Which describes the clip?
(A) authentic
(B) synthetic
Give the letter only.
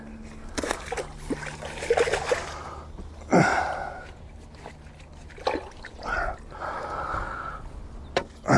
A